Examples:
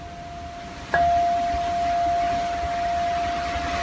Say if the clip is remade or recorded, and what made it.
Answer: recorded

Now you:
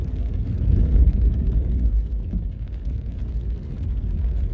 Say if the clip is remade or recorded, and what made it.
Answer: remade, codec, SNAC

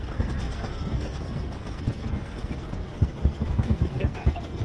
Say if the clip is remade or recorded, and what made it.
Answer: remade, codec, SNAC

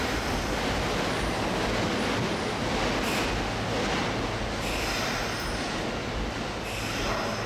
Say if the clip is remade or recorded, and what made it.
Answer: recorded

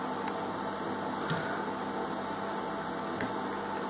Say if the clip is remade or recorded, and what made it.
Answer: recorded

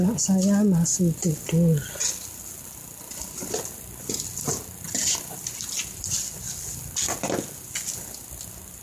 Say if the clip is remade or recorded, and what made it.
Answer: recorded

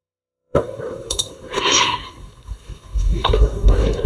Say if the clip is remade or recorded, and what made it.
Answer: remade, codec, SNAC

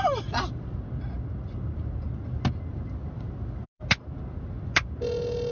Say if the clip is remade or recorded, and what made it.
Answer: recorded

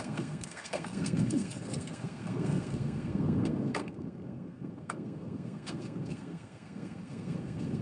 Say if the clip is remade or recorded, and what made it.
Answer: remade, codec, SNAC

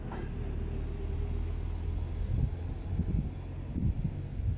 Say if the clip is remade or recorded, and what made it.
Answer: recorded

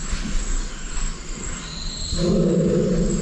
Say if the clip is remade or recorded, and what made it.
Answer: recorded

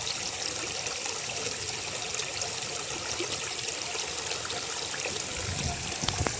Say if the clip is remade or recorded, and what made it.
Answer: recorded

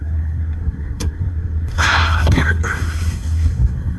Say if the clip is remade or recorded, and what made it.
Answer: remade, codec, SNAC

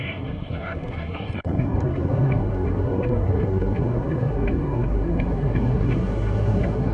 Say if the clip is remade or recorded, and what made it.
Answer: remade, codec, SNAC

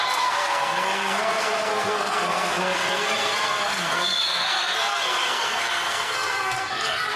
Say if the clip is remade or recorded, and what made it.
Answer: remade, codec, SNAC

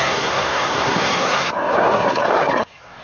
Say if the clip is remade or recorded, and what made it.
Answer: remade, codec, SNAC